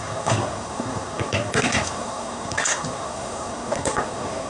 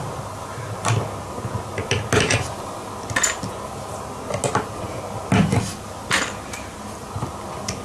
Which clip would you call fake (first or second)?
first